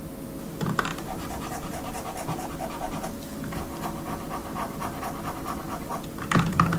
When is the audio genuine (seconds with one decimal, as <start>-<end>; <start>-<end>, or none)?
0.0-0.9; 3.1-5.9